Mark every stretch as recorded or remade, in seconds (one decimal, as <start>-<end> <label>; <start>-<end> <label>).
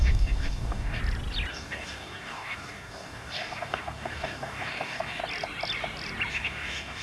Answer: 0.0-1.0 remade; 1.0-1.5 recorded; 1.5-5.2 remade; 5.2-6.3 recorded; 6.3-7.0 remade